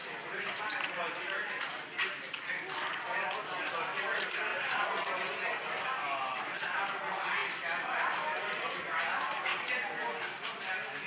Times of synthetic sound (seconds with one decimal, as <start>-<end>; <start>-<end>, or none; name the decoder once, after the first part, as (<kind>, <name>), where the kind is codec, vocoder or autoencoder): none